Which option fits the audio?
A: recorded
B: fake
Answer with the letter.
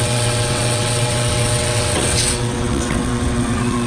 B